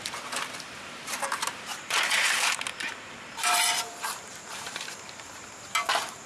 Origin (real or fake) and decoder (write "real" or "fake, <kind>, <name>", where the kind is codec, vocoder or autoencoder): fake, vocoder, BigVGAN v2